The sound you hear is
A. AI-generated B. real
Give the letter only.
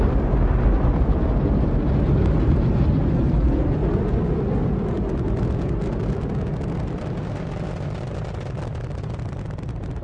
B